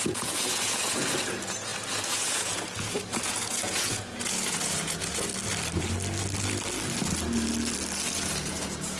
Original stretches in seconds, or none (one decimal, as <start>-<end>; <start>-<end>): 5.3-8.1